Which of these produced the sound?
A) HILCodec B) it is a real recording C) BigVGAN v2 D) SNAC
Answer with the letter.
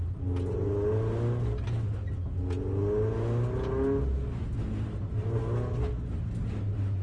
B